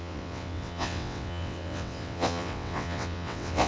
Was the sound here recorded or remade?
remade